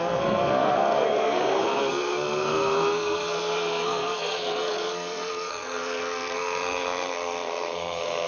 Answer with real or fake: fake